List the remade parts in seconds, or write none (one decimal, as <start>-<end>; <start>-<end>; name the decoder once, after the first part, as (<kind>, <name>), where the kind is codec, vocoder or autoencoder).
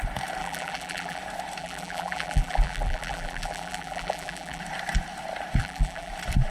0.4-1.2 (vocoder, BigVGAN v2); 1.6-4.6; 5.6-6.1